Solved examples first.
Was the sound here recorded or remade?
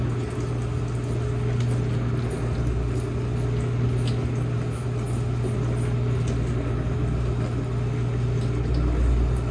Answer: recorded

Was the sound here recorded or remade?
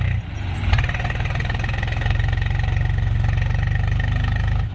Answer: recorded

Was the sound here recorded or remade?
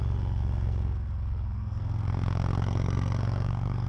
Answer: remade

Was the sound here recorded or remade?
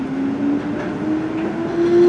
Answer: recorded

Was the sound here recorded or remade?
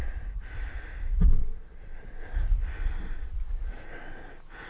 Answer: recorded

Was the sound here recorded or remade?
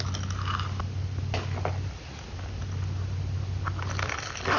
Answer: recorded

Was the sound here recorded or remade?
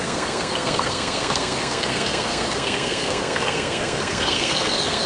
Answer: remade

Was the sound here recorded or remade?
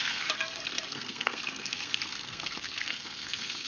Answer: remade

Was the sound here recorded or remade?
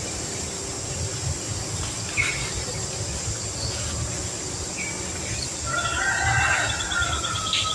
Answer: recorded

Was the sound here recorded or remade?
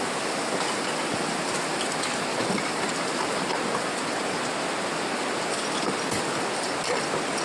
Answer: recorded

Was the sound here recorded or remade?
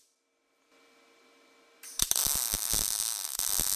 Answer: recorded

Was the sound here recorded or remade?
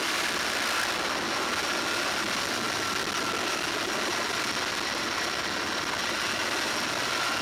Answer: recorded